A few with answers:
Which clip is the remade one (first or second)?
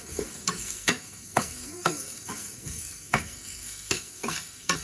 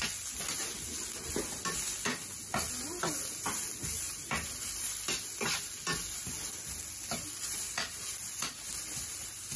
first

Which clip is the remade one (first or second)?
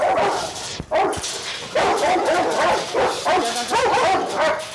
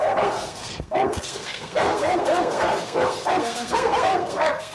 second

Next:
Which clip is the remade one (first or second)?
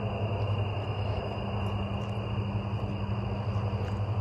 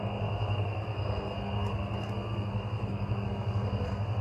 second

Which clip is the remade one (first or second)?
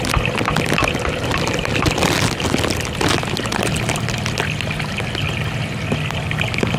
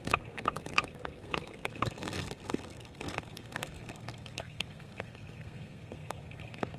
second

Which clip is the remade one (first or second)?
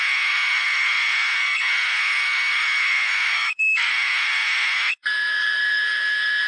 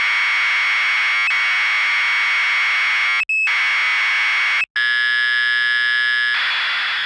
first